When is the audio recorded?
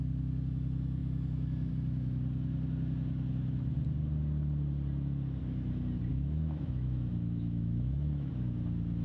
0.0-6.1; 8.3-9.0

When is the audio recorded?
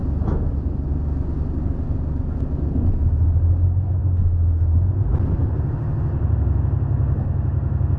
0.0-8.0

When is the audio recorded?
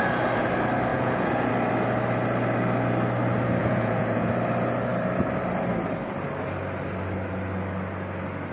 0.0-0.9; 1.5-3.6; 4.3-8.5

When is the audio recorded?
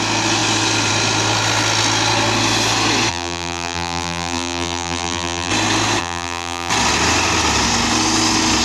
0.0-3.1; 5.5-6.0; 6.7-8.6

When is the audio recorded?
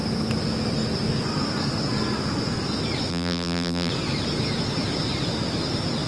0.0-3.1; 3.9-6.1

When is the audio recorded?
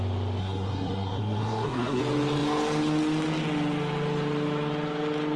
0.0-0.4; 2.0-5.4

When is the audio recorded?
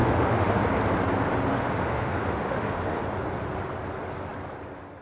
0.6-1.5; 3.0-5.0